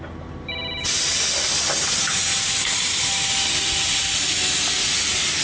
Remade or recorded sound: recorded